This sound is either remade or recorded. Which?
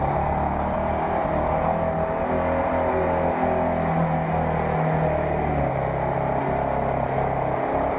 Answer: recorded